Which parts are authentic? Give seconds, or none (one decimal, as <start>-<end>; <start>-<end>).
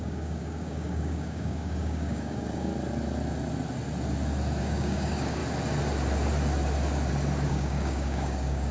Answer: 2.7-4.6; 5.4-7.5